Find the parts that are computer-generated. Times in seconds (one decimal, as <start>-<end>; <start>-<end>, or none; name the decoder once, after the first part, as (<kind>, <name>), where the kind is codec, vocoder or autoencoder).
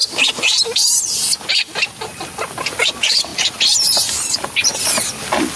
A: none